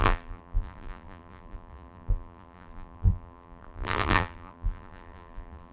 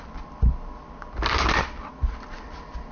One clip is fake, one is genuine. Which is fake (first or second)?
first